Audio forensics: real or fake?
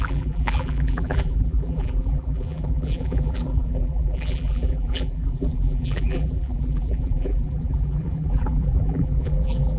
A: fake